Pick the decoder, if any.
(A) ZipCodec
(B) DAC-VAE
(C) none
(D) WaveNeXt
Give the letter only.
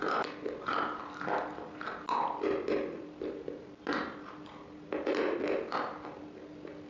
C